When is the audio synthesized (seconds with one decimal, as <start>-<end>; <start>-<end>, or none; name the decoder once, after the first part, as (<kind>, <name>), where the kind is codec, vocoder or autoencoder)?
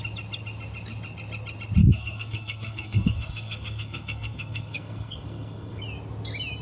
1.8-5.8 (codec, SNAC)